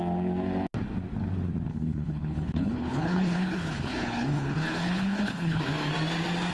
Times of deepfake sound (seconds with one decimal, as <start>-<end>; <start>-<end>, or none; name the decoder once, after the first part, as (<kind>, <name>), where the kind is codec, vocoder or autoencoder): 1.7-5.6 (codec, HILCodec)